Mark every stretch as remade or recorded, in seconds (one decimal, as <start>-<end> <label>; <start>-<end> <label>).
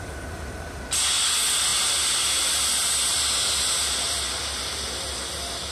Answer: 0.0-5.7 recorded